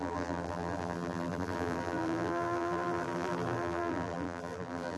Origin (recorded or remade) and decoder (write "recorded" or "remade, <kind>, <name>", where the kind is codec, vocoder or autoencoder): remade, vocoder, BigVGAN v2